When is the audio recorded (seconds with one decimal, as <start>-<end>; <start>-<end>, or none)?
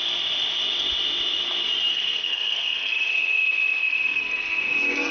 0.0-1.9